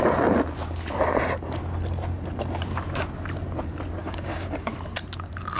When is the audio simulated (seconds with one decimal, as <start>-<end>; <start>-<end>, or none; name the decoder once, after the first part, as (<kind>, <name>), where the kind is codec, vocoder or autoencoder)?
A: 4.0-4.7 (codec, DAC)